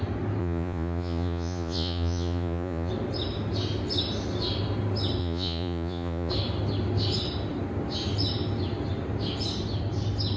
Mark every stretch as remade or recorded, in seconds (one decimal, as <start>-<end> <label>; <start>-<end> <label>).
0.0-0.4 recorded; 0.4-2.9 remade; 2.9-5.2 recorded; 5.2-6.3 remade; 6.3-10.4 recorded